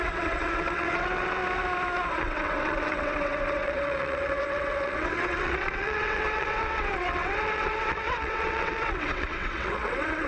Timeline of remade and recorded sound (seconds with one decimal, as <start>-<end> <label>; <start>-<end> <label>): 0.0-1.4 remade; 1.4-2.1 recorded; 2.1-10.3 remade